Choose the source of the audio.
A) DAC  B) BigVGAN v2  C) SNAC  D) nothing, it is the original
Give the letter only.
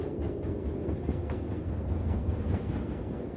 C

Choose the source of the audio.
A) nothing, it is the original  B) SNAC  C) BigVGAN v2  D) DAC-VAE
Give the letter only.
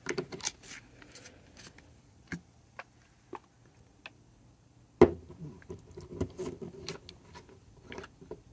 A